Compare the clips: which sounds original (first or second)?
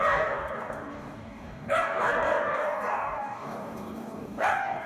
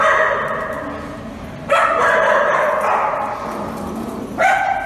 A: second